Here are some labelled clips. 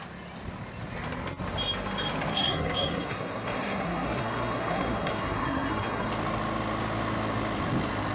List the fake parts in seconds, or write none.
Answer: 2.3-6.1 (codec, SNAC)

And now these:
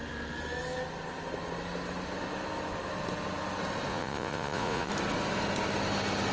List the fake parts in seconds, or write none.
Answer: 3.9-4.9 (vocoder, Vocos)